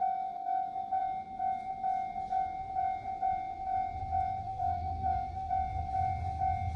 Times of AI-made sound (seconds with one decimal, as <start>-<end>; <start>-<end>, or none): 4.4-5.5